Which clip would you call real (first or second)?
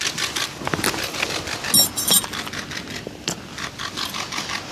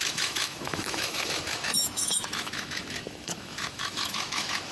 first